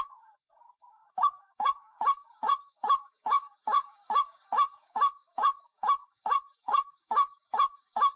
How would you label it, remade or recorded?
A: remade